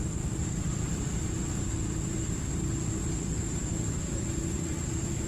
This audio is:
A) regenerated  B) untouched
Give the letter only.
A